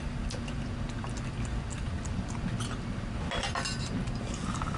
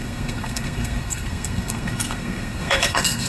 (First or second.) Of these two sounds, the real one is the first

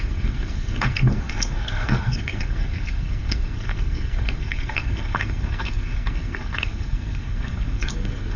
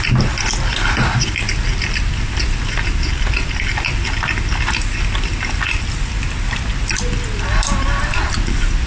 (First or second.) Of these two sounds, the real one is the second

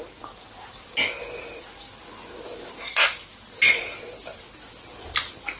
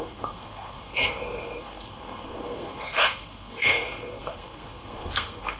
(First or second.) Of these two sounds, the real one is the first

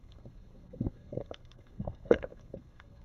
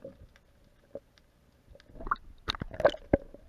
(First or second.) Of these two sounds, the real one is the second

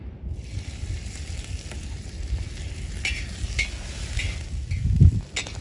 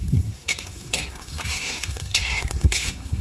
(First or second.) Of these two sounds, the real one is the first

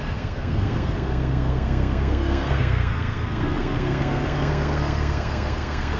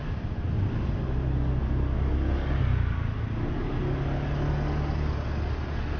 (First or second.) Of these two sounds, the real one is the second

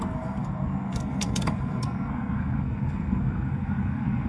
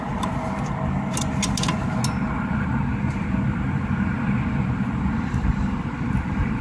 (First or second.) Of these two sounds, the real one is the second